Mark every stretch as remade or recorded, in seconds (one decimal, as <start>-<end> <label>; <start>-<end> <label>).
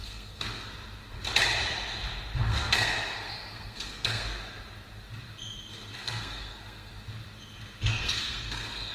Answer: 0.0-0.7 remade; 0.7-2.5 recorded; 2.5-4.4 remade; 4.4-6.0 recorded; 6.0-6.9 remade; 6.9-7.9 recorded; 7.9-8.9 remade